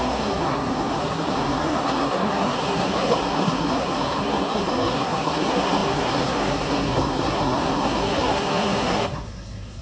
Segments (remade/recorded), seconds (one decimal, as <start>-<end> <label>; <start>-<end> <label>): 0.0-9.8 remade